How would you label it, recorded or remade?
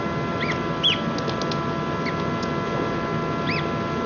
recorded